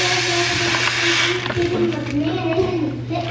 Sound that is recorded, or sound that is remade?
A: recorded